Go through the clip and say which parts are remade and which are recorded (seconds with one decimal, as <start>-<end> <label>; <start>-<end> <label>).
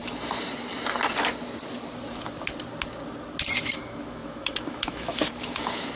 0.0-3.6 recorded; 3.6-6.0 remade